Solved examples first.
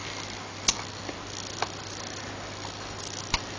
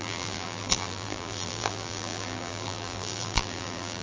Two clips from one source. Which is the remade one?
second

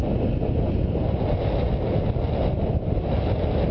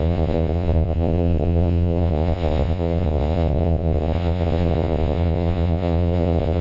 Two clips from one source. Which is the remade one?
second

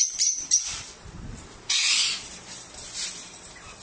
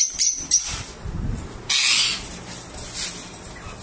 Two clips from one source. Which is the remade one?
first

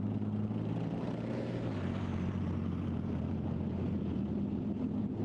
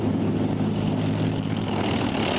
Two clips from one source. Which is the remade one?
first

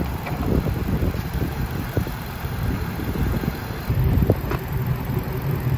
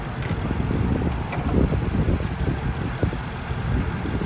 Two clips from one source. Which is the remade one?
first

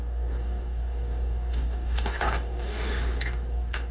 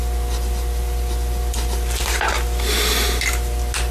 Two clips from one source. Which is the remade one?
first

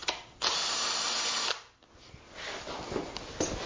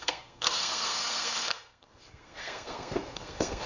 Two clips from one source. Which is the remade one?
second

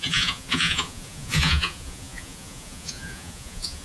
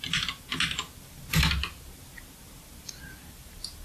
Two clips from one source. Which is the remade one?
first